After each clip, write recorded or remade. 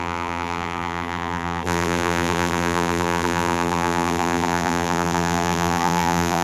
remade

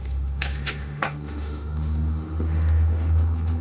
remade